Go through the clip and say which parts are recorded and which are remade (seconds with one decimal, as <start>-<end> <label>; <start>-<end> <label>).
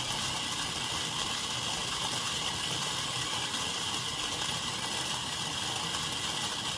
0.0-1.8 recorded; 1.8-5.9 remade; 5.9-6.8 recorded